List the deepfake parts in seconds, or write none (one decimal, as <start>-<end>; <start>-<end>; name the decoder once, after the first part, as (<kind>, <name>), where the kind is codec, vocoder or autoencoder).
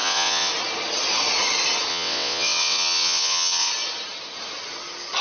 0.0-0.5 (vocoder, WaveNeXt); 1.9-3.7